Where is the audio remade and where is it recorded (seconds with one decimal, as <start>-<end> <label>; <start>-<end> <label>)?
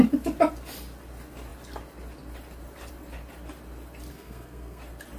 0.0-4.1 recorded; 4.1-4.8 remade; 4.8-5.2 recorded